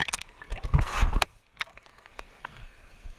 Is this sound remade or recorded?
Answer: remade